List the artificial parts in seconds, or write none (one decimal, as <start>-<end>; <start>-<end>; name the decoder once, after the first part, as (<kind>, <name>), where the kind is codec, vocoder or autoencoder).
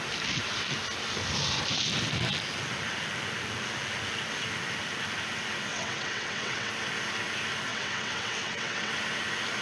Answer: 5.7-6.7 (vocoder, WaveNeXt); 7.7-8.9